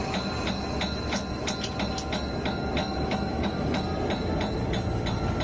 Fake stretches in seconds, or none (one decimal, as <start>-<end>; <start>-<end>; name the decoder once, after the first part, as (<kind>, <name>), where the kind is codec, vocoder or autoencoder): 2.8-3.8 (autoencoder, DAC-VAE)